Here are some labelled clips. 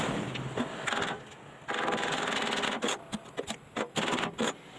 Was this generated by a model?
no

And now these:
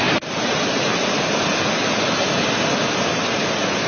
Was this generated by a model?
no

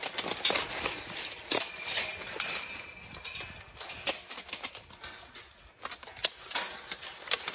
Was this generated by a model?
no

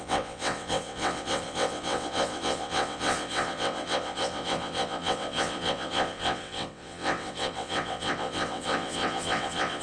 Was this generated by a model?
yes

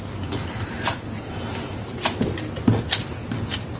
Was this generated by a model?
no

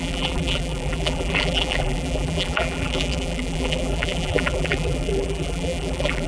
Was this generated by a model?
yes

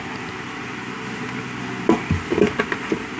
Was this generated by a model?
no